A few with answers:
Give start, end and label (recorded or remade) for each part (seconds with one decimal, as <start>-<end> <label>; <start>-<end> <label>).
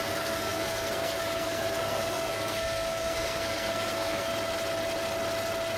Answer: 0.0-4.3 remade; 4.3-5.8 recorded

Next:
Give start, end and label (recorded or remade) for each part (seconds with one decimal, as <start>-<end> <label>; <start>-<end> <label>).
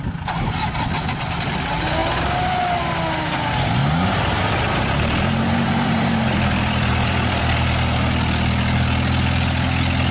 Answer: 0.0-3.8 recorded; 3.8-7.4 remade; 7.4-10.1 recorded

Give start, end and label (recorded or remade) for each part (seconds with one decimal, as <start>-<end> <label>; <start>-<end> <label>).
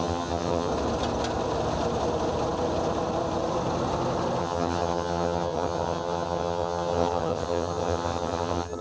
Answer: 0.0-0.7 remade; 0.7-4.4 recorded; 4.4-8.8 remade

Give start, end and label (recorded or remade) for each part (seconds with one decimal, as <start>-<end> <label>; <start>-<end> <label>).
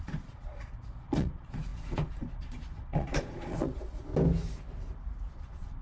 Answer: 0.0-4.1 remade; 4.1-5.3 recorded; 5.3-5.8 remade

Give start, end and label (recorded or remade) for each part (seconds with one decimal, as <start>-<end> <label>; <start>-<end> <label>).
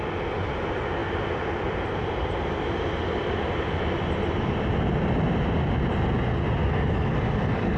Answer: 0.0-6.6 recorded; 6.6-7.8 remade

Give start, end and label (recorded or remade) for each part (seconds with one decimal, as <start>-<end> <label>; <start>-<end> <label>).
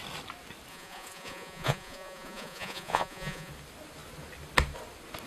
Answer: 0.0-0.7 recorded; 0.7-3.5 remade; 3.5-5.3 recorded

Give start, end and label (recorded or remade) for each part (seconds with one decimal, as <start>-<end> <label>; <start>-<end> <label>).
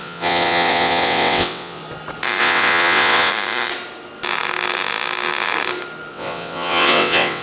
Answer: 0.0-1.8 remade; 1.8-2.4 recorded; 2.4-3.3 remade; 3.3-6.1 recorded; 6.1-7.4 remade